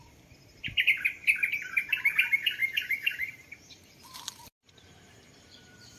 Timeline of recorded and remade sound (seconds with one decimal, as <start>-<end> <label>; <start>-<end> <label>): 0.0-0.9 remade; 0.9-1.8 recorded; 1.8-6.0 remade